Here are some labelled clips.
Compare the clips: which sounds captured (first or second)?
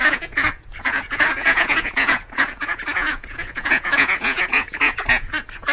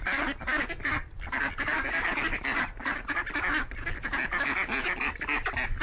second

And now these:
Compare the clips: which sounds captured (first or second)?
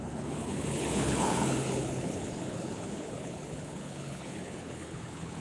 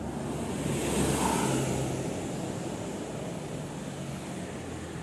second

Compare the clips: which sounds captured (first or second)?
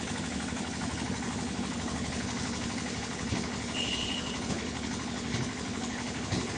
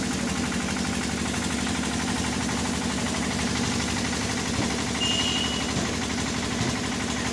second